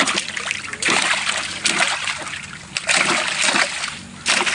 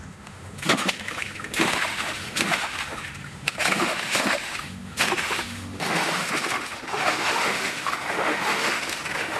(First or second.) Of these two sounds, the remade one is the second